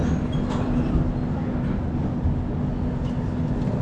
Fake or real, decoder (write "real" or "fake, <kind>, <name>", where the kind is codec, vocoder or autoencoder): real